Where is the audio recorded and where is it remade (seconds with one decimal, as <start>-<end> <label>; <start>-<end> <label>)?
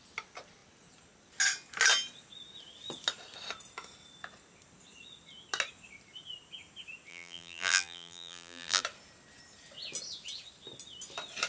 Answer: 0.0-7.1 recorded; 7.1-8.8 remade; 8.8-11.5 recorded